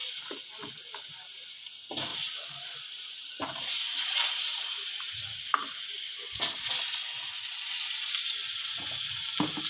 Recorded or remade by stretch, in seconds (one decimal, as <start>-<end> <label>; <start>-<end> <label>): 0.0-2.1 recorded; 2.1-6.7 remade; 6.7-9.7 recorded